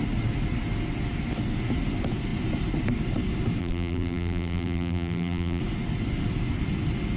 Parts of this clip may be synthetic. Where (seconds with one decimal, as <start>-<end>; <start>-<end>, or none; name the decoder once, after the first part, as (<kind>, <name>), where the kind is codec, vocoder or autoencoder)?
3.6-5.6 (vocoder, BigVGAN v2)